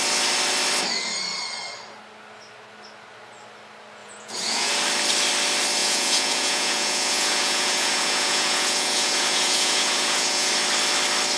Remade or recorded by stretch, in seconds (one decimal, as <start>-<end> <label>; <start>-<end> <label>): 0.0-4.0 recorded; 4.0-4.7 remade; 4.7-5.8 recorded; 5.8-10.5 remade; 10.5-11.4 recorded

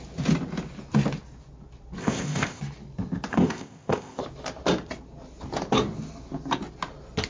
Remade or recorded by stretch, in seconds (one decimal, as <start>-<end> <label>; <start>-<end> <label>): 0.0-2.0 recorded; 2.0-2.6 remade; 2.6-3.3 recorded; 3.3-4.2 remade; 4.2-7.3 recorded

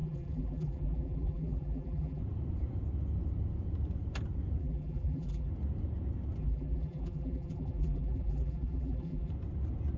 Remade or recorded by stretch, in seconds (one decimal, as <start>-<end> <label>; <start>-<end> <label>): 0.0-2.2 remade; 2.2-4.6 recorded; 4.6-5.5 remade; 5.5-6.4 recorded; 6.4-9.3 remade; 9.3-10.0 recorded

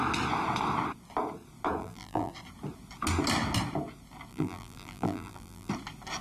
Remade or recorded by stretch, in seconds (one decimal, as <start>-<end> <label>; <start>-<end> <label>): 0.0-1.8 recorded; 1.8-2.3 remade; 2.3-4.3 recorded; 4.3-5.7 remade; 5.7-6.2 recorded

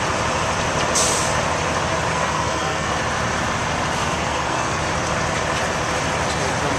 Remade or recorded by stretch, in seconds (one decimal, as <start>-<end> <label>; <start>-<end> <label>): 0.0-2.1 recorded; 2.1-2.9 remade; 2.9-4.0 recorded; 4.0-4.8 remade; 4.8-6.8 recorded

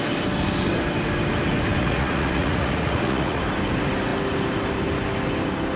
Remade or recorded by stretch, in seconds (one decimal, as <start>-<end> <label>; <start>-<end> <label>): 0.0-1.8 recorded; 1.8-3.4 remade; 3.4-5.8 recorded